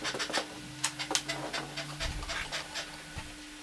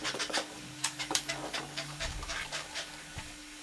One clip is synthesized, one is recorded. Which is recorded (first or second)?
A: first